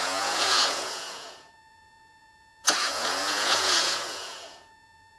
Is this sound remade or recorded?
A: remade